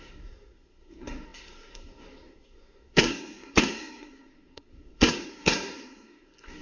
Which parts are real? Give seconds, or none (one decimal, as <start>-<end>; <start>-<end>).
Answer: none